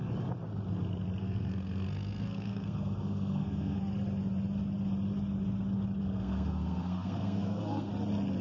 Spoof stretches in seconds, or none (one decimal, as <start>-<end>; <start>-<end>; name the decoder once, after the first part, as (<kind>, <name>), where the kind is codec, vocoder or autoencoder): 1.2-3.8 (codec, SNAC); 6.0-7.9

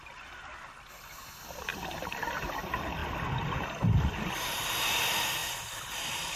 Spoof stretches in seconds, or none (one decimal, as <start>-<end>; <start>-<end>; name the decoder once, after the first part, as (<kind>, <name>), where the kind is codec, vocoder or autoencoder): none

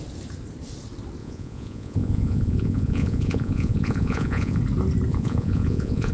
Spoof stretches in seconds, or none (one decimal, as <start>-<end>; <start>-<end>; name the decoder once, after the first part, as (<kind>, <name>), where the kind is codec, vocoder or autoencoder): 1.2-4.6 (vocoder, Vocos); 5.1-6.1

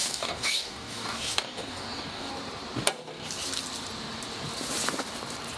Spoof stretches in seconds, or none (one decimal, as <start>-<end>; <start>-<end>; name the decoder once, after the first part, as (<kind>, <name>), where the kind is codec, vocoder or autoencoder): 0.0-2.3 (codec, DAC)